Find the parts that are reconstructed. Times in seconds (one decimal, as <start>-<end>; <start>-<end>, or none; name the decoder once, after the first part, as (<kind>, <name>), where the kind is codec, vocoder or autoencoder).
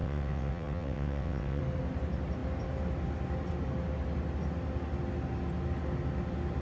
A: 0.0-1.6 (vocoder, WaveNeXt)